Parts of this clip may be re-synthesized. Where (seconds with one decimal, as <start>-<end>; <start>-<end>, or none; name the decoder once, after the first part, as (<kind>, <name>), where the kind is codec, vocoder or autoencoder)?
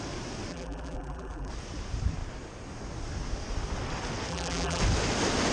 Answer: 0.5-1.5 (vocoder, BigVGAN v2); 4.3-4.8